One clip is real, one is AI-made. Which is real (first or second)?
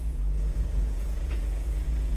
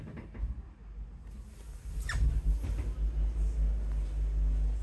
second